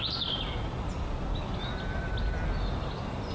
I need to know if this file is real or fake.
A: real